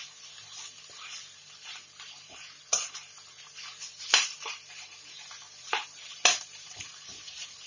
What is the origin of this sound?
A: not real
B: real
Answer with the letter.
A